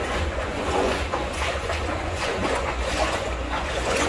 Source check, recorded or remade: remade